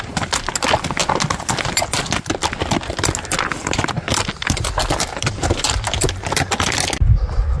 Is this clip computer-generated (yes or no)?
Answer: no